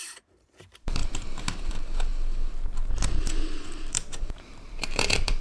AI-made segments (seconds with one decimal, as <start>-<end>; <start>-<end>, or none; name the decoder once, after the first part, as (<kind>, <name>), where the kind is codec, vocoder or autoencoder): 0.0-1.0 (vocoder, BigVGAN v2); 1.6-2.1; 3.9-5.4